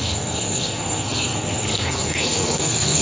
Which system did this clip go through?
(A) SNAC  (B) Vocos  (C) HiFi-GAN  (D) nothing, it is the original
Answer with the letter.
A